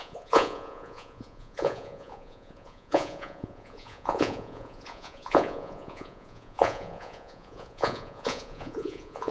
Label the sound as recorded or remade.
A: remade